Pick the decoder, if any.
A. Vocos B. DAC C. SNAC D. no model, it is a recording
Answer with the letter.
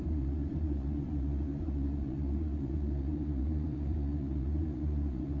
A